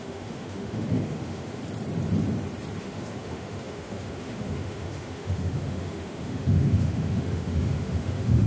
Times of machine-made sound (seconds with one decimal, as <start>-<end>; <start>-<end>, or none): 0.0-1.6; 2.8-8.5